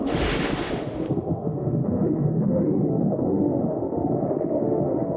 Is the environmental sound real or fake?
fake